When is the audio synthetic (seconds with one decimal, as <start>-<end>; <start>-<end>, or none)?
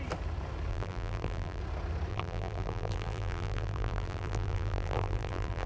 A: 0.7-1.6; 2.1-5.7